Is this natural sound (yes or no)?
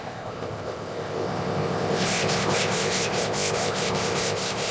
no